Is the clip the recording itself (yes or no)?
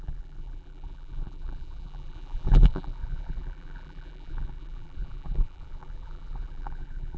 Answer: no